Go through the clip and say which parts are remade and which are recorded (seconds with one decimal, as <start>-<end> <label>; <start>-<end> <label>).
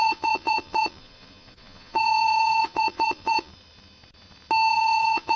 0.0-3.5 remade; 3.5-4.7 recorded; 4.7-5.4 remade